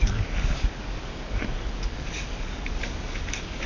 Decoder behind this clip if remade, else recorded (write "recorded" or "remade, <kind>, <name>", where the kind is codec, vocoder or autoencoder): remade, codec, DAC